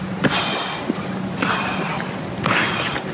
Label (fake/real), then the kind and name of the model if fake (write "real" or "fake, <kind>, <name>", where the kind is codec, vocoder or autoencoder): real